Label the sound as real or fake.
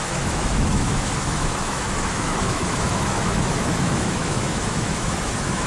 fake